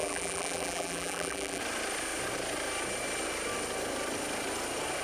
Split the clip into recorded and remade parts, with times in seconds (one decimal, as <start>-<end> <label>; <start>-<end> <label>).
0.0-1.6 remade; 1.6-5.0 recorded